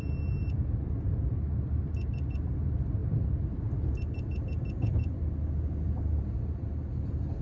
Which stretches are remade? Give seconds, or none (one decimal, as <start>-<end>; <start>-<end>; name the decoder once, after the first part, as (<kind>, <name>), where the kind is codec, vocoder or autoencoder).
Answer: none